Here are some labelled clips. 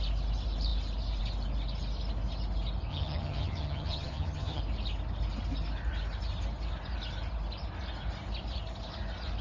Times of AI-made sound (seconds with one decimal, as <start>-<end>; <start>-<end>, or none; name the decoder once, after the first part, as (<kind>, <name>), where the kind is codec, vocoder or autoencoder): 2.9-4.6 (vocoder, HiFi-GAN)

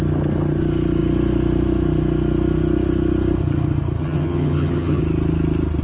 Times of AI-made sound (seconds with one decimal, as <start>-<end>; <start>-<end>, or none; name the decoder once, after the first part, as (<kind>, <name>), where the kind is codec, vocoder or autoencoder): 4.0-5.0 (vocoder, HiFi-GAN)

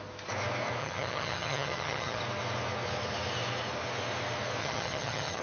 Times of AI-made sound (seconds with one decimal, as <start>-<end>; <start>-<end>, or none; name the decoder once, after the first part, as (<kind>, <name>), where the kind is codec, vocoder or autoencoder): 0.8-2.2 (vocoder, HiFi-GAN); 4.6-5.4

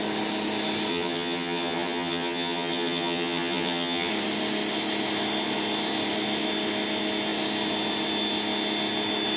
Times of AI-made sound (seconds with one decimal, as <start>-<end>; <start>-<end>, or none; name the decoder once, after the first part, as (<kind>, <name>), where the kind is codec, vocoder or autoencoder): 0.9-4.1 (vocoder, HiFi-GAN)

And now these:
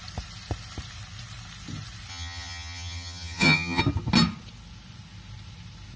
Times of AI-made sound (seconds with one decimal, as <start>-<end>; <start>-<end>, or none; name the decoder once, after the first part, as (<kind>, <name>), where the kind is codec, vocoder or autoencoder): 2.1-3.8 (vocoder, HiFi-GAN)

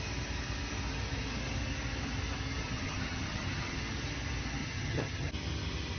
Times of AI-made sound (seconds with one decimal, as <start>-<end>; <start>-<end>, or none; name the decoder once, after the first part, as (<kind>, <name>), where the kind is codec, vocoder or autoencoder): 2.6-3.8 (vocoder, HiFi-GAN); 4.6-5.3

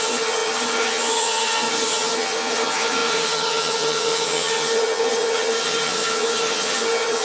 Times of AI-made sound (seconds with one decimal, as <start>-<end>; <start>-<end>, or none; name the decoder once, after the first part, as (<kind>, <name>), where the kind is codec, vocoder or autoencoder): 0.0-7.2 (vocoder, HiFi-GAN)